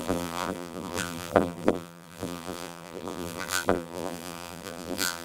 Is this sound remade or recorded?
remade